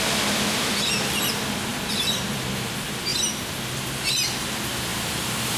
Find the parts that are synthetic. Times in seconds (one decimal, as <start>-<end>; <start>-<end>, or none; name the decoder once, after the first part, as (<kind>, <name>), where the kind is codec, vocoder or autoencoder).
1.7-2.7 (vocoder, BigVGAN v2); 4.9-5.6